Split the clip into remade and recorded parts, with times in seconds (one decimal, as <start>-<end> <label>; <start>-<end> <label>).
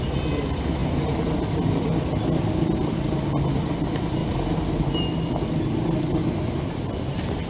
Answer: 0.0-7.5 recorded